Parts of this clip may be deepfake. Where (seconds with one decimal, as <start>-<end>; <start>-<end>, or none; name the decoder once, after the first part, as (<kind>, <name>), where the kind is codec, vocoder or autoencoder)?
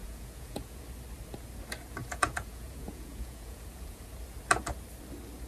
0.0-0.8 (vocoder, Vocos); 2.0-4.1